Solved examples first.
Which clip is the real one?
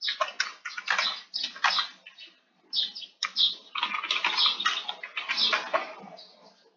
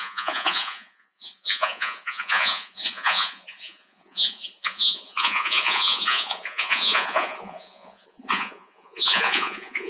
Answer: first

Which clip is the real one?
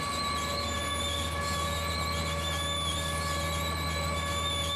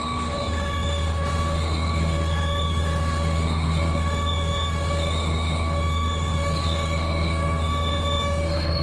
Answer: first